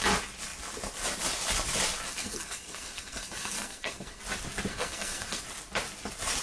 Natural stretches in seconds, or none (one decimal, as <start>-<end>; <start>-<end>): 0.0-2.1; 4.2-4.7; 5.4-6.4